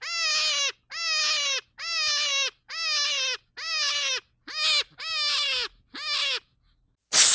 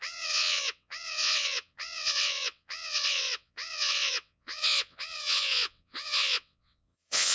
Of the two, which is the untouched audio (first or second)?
first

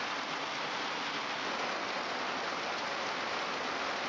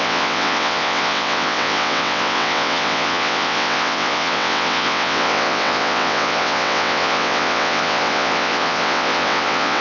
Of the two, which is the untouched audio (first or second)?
first